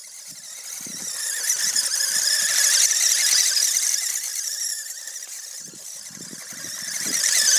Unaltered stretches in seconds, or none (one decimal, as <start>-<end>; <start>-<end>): 0.5-4.3